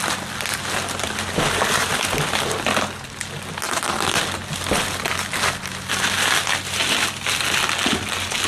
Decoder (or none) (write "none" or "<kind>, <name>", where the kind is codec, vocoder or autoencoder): none